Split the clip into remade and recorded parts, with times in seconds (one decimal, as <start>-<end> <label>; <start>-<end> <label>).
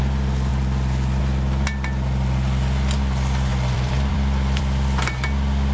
0.0-0.5 recorded; 0.5-1.2 remade; 1.2-3.5 recorded; 3.5-4.6 remade; 4.6-5.7 recorded